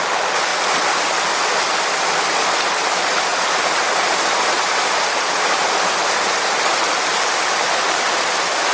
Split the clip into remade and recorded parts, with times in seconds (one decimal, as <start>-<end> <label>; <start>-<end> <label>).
0.0-8.7 recorded